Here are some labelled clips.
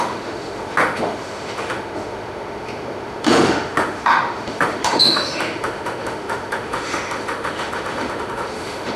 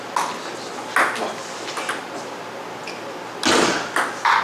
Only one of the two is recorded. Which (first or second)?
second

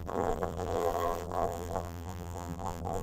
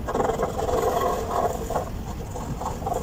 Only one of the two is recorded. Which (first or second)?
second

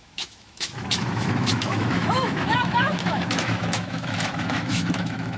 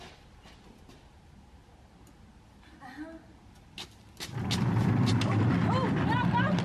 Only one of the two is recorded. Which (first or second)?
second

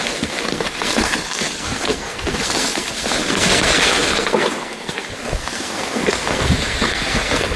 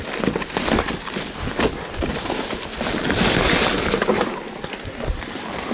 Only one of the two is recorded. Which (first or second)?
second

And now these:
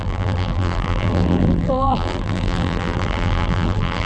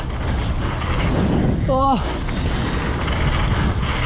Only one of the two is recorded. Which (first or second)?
second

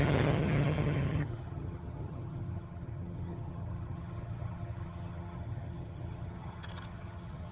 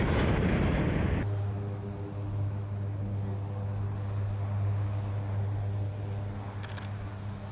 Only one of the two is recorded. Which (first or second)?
second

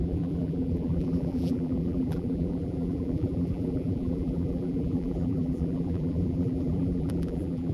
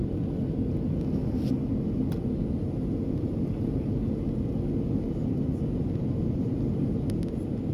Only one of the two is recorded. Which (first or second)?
second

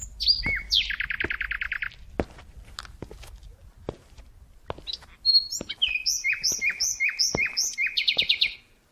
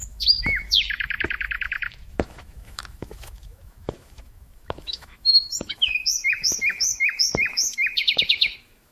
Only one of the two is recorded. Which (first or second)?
first